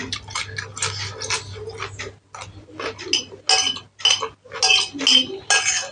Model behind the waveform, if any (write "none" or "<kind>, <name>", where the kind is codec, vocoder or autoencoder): none